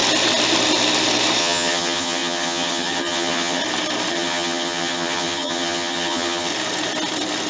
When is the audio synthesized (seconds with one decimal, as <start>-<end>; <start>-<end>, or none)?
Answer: 1.4-3.6; 4.1-6.5